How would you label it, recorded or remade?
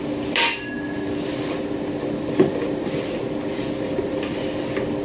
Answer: recorded